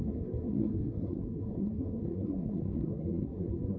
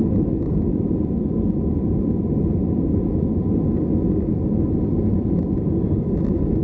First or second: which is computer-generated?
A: first